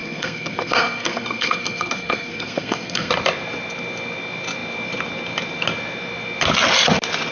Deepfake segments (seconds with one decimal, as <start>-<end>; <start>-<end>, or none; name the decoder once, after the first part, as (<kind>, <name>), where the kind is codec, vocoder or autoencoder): 0.0-3.1 (codec, SNAC)